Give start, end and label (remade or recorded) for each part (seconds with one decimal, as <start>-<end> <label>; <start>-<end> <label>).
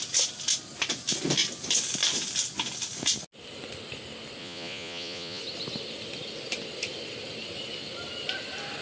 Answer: 0.0-4.4 recorded; 4.4-5.4 remade; 5.4-8.8 recorded